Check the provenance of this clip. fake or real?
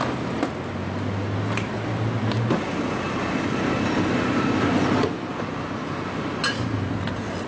real